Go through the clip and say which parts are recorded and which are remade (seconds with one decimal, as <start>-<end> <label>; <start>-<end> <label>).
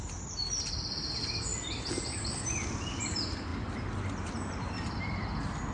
0.0-5.7 recorded